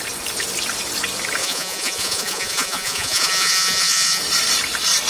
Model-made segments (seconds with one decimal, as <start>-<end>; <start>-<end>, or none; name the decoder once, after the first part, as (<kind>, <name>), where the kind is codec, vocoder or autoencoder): 1.4-4.2 (vocoder, Vocos)